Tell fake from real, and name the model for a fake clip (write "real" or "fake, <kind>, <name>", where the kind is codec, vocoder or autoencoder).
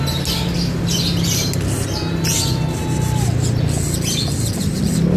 real